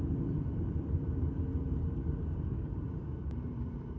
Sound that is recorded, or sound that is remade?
remade